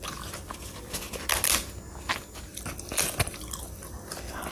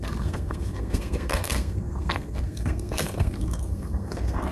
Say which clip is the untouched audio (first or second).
first